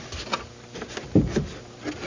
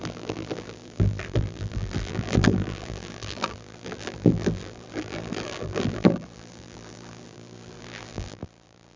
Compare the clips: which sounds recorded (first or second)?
first